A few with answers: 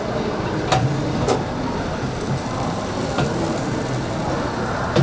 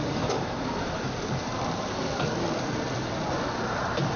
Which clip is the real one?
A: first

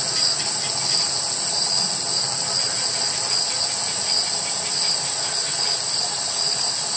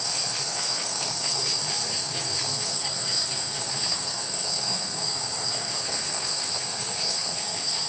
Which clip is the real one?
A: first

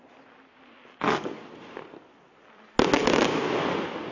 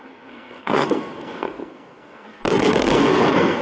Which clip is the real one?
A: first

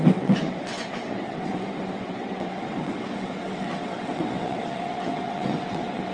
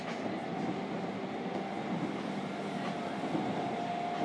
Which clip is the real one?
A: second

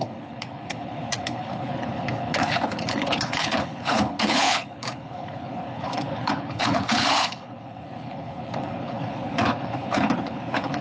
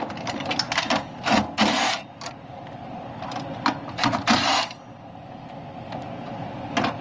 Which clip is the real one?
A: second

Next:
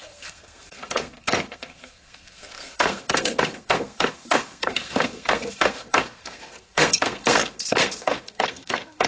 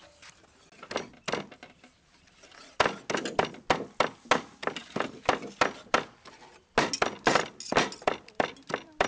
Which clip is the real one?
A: second